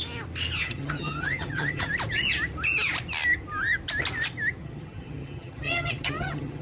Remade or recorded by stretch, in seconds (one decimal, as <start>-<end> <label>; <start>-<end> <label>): 0.0-0.6 recorded; 0.6-1.9 remade; 1.9-4.6 recorded; 4.6-6.6 remade